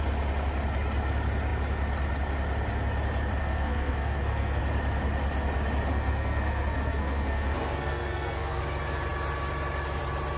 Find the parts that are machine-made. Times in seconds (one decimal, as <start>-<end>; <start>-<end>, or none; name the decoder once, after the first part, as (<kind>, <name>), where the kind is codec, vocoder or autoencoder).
3.4-4.6 (codec, SNAC); 5.9-8.6

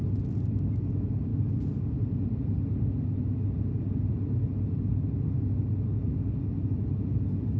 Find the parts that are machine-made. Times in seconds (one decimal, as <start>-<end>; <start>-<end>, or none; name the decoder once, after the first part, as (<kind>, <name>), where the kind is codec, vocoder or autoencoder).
none

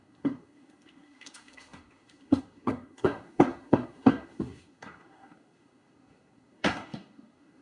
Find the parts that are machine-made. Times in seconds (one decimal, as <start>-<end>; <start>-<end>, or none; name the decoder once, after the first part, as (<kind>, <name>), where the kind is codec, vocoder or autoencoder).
0.0-7.6 (codec, SNAC)

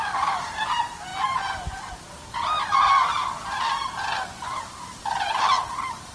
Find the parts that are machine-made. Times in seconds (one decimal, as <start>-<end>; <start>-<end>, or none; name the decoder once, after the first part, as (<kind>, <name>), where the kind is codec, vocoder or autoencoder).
0.0-6.1 (vocoder, BigVGAN v2)

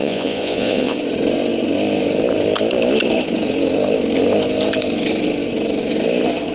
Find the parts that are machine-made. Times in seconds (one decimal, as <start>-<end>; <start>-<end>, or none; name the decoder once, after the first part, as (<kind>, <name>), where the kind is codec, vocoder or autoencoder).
0.0-1.0 (vocoder, Vocos)

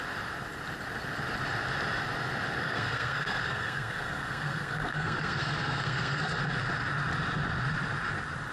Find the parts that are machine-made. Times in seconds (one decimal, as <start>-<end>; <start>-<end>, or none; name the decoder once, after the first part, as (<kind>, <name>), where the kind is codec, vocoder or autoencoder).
2.6-6.4 (codec, SNAC)

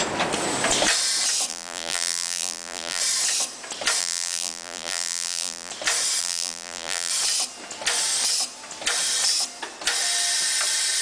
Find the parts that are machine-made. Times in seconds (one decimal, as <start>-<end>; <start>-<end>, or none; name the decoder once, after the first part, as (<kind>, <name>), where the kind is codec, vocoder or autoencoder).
1.5-3.0 (vocoder, BigVGAN v2); 4.0-5.7; 6.2-7.1